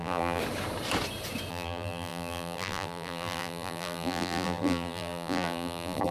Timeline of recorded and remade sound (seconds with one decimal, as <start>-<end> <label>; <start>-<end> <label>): 0.0-0.4 remade; 0.4-1.5 recorded; 1.5-6.1 remade